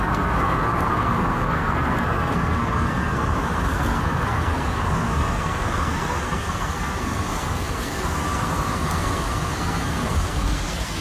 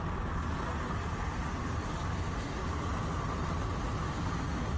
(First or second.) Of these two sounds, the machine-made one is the first